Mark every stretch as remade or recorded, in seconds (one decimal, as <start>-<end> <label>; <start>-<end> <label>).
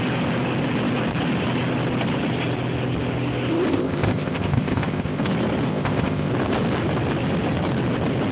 0.0-3.7 recorded; 3.7-5.2 remade; 5.2-5.7 recorded; 5.7-6.3 remade; 6.3-8.3 recorded